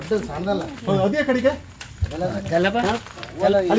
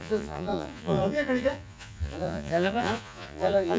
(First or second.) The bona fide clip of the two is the first